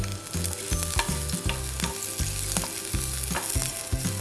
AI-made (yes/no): no